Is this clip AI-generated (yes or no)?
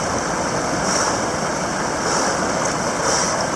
no